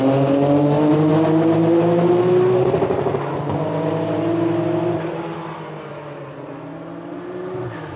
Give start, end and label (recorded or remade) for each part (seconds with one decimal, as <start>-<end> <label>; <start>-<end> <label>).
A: 0.0-8.0 recorded